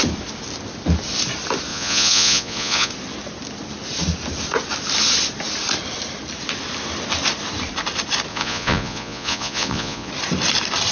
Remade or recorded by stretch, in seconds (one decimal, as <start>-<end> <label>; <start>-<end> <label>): 0.0-1.7 recorded; 1.7-2.9 remade; 2.9-8.3 recorded; 8.3-10.1 remade; 10.1-10.9 recorded